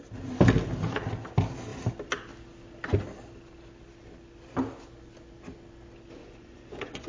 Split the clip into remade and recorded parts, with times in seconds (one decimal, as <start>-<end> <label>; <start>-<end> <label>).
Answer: 0.0-6.2 recorded; 6.2-7.1 remade